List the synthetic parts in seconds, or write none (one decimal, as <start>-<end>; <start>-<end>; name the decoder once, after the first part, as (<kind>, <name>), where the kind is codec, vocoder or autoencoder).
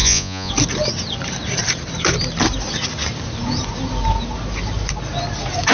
0.0-0.5 (vocoder, Vocos)